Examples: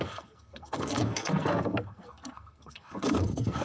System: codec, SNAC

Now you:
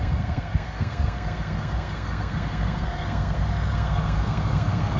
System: codec, SNAC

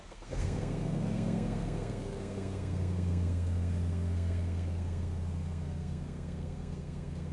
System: codec, SNAC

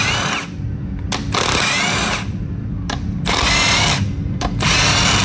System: none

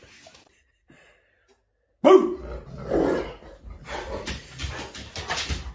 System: none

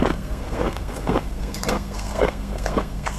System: codec, SNAC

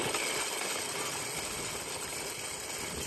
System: none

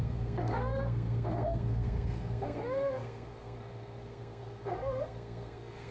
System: codec, SNAC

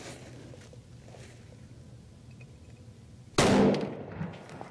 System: none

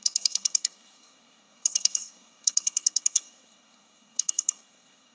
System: codec, SNAC